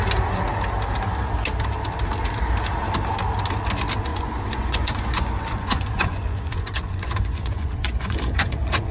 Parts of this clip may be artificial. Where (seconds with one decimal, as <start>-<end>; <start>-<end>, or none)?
4.1-8.9